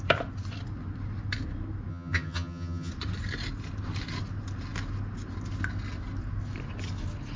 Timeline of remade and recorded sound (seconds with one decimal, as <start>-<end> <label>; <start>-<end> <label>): 0.0-1.9 recorded; 1.9-2.9 remade; 2.9-7.4 recorded